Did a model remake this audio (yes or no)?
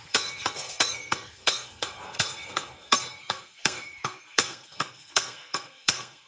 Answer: yes